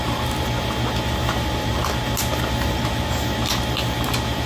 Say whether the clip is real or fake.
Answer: fake